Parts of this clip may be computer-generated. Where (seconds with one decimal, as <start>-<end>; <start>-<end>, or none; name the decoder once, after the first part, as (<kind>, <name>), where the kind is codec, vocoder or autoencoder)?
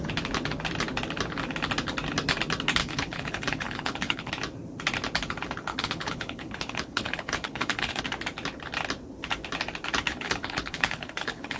2.8-4.3 (codec, HILCodec); 5.7-8.0; 10.1-11.6